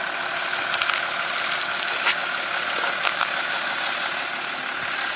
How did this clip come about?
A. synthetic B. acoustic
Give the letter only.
B